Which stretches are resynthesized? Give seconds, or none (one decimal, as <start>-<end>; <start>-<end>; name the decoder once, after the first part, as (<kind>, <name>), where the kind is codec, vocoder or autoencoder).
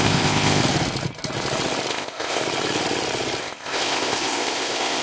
0.0-0.6 (codec, ZipCodec); 1.9-2.4; 3.4-5.0